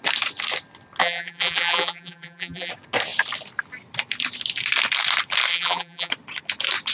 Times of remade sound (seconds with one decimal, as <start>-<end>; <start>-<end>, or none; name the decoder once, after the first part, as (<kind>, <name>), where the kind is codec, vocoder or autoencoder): 1.0-2.7 (vocoder, BigVGAN v2); 5.5-6.1